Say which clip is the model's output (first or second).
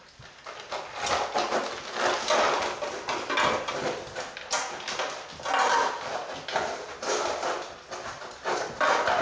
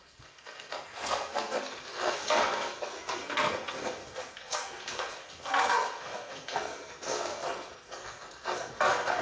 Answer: second